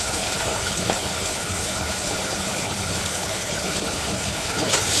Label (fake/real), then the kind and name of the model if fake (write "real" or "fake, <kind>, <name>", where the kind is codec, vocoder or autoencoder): fake, codec, HILCodec